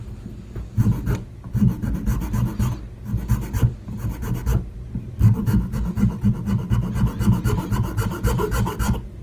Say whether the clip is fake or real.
real